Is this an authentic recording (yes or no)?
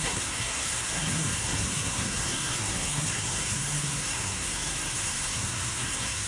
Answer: no